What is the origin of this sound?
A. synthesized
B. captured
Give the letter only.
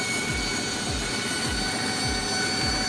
B